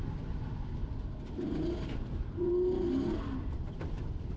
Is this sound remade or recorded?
recorded